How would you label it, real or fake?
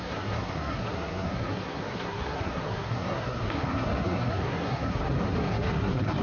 fake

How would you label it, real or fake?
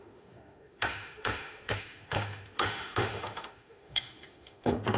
fake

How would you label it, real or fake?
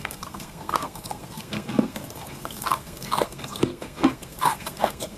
fake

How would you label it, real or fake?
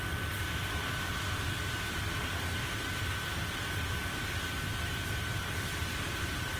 real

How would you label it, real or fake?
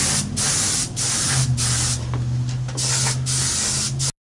real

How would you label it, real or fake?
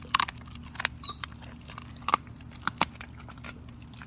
real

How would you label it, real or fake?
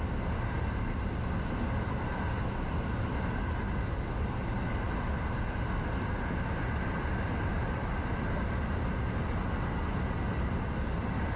real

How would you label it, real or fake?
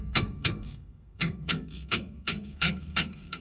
fake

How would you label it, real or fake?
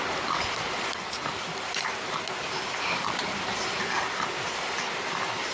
real